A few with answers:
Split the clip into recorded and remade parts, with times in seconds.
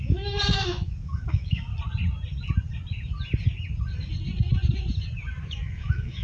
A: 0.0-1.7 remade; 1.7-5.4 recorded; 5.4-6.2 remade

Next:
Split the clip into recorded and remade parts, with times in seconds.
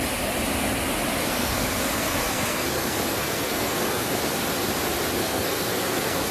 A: 0.0-1.2 recorded; 1.2-4.5 remade; 4.5-5.2 recorded; 5.2-6.3 remade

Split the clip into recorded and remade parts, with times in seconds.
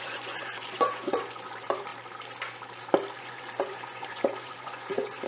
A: 0.0-1.9 remade; 1.9-3.2 recorded; 3.2-5.3 remade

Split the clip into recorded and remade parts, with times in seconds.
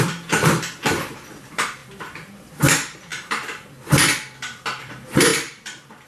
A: 0.0-3.1 remade; 3.1-4.8 recorded; 4.8-6.1 remade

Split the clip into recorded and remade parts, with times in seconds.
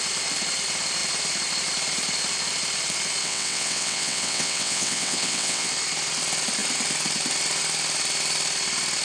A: 0.0-3.2 recorded; 3.2-5.7 remade; 5.7-9.0 recorded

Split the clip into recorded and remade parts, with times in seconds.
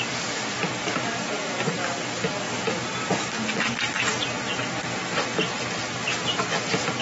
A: 0.0-7.0 recorded